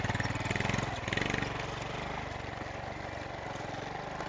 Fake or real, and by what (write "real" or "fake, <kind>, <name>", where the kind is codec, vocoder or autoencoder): real